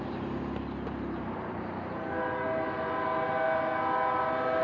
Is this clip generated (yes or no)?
no